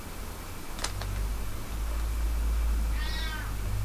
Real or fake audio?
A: real